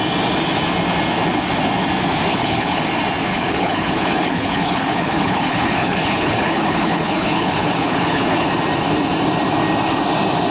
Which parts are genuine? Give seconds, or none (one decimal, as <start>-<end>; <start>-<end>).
0.0-2.3; 2.8-3.3; 8.5-10.5

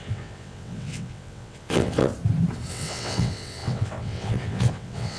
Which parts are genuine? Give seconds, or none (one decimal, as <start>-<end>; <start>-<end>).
2.1-2.7